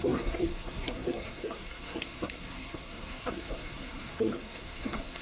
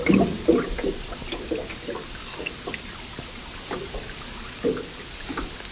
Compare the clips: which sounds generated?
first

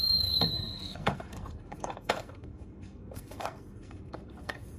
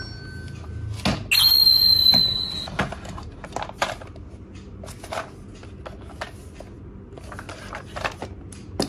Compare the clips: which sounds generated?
first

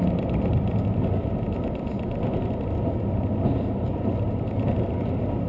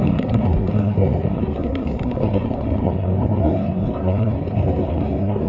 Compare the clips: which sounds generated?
second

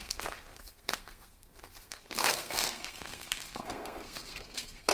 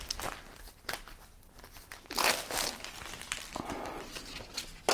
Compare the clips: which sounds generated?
first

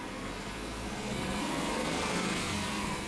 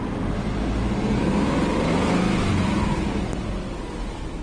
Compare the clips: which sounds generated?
first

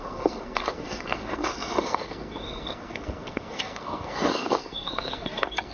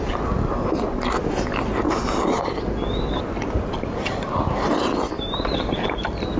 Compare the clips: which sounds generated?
first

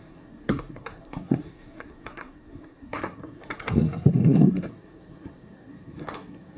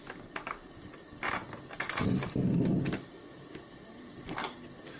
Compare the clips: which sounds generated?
first